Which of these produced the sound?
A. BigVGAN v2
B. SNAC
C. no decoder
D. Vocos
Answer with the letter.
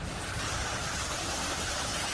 A